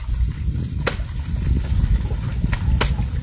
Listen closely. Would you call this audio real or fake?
real